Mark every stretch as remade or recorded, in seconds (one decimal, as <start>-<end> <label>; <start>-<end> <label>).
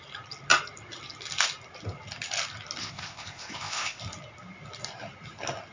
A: 0.0-2.8 recorded; 2.8-4.0 remade; 4.0-5.7 recorded